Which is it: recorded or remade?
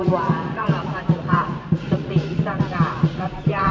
remade